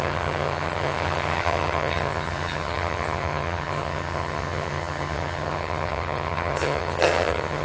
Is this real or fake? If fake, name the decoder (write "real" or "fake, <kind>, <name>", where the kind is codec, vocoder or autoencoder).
fake, vocoder, HiFi-GAN